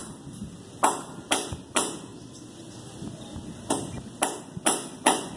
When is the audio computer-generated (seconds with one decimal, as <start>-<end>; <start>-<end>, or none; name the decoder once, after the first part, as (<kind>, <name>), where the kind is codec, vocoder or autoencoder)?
1.7-2.1 (vocoder, Vocos); 4.4-5.4